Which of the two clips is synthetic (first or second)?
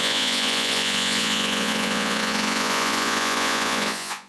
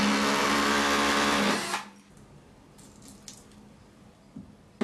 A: first